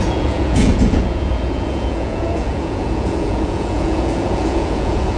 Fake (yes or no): yes